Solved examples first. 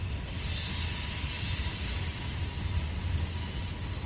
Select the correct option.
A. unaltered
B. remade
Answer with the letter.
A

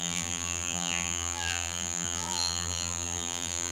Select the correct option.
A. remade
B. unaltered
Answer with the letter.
A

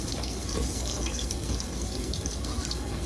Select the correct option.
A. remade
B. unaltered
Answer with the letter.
A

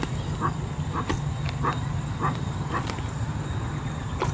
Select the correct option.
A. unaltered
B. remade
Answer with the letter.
A